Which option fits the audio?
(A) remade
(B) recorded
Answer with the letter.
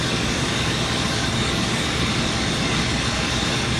A